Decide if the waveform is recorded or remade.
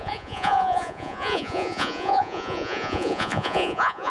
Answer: remade